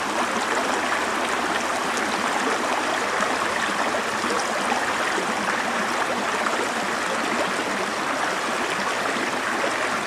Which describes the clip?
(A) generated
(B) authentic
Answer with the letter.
B